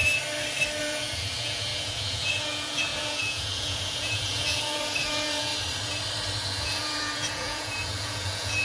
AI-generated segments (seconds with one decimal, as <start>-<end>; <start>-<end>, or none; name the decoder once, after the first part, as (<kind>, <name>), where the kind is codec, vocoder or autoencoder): 0.8-5.5 (vocoder, Vocos); 6.4-8.6